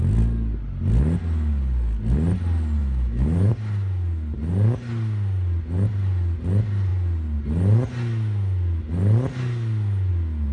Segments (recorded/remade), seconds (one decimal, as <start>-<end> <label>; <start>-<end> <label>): 0.0-2.8 recorded; 2.8-3.5 remade; 3.5-10.5 recorded